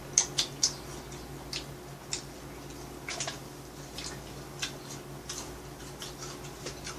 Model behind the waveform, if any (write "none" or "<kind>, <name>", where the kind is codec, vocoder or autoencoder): none